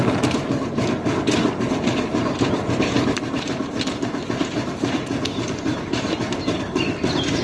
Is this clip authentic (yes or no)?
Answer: no